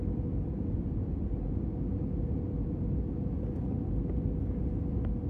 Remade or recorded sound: recorded